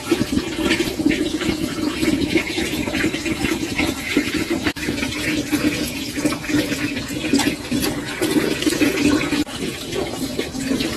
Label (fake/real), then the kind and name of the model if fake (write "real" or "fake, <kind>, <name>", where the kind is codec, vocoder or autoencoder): fake, vocoder, Vocos